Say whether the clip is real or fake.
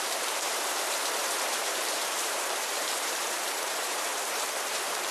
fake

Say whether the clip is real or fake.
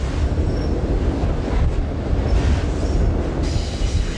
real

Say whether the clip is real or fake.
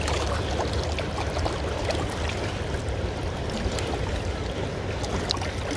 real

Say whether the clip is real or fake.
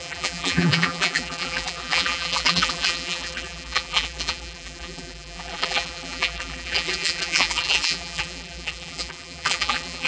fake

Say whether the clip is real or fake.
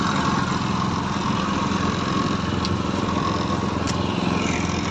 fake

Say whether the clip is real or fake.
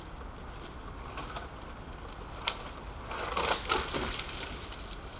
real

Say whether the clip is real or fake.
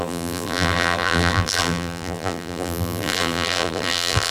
fake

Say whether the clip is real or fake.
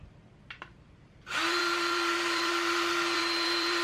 fake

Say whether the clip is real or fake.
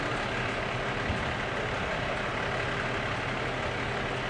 real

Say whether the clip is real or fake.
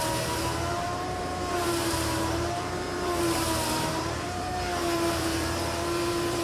fake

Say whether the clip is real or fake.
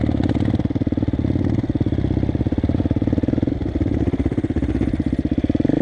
real